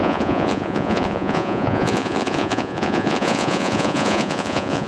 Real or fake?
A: fake